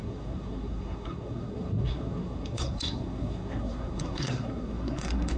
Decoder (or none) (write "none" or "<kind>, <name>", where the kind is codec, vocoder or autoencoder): codec, SNAC